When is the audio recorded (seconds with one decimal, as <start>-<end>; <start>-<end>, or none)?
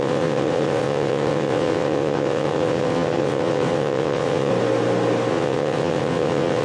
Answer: 4.5-5.3